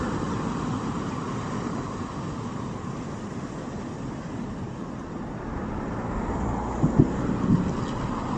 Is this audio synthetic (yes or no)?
no